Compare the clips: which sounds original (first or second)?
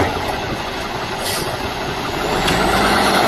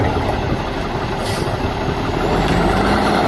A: second